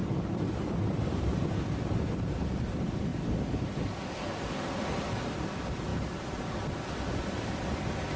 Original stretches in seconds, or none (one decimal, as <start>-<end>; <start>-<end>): 0.0-8.2